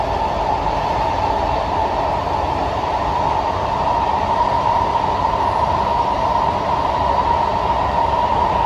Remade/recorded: recorded